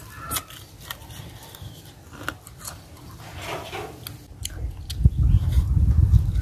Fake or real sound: real